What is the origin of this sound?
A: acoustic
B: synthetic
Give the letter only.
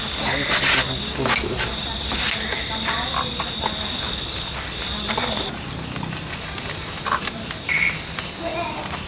A